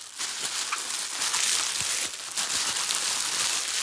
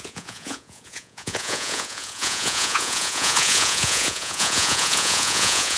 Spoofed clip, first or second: second